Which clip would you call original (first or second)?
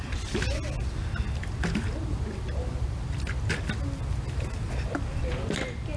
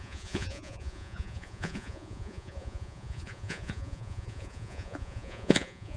first